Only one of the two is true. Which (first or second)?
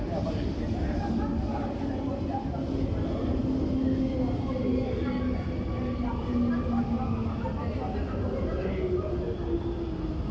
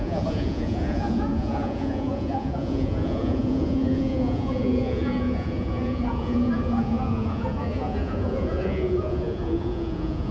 first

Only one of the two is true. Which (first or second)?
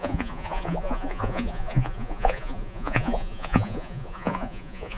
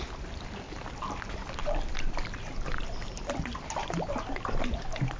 second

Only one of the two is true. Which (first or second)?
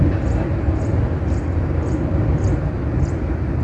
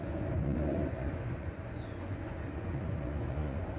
first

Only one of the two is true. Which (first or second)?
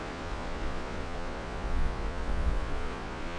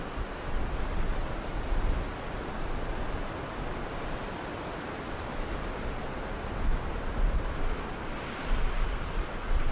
second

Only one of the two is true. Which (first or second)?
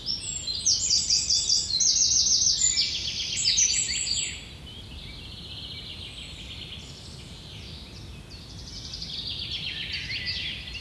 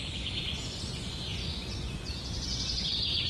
first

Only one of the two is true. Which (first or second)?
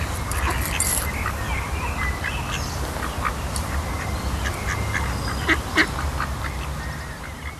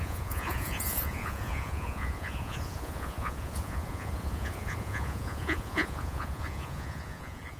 first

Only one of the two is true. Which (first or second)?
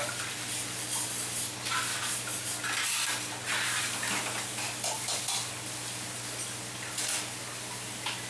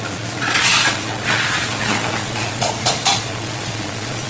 first